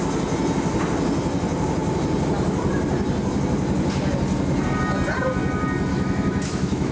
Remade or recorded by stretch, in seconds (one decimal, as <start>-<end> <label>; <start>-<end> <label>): 0.0-5.9 recorded; 5.9-6.9 remade

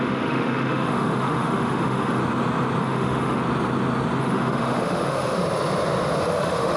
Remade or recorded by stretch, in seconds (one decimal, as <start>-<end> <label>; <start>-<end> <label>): 0.0-2.2 remade; 2.2-2.8 recorded; 2.8-3.4 remade; 3.4-4.2 recorded; 4.2-5.4 remade; 5.4-6.2 recorded; 6.2-6.8 remade

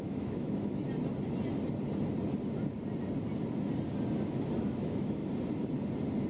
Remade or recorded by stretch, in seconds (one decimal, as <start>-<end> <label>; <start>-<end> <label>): 0.0-0.8 remade; 0.8-4.6 recorded; 4.6-5.2 remade; 5.2-6.3 recorded